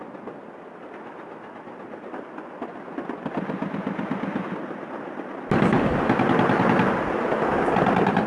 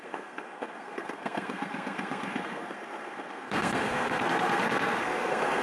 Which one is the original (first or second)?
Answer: first